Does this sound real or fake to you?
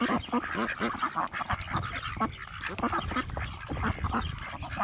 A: real